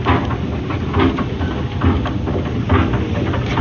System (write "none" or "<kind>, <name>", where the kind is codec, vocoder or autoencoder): none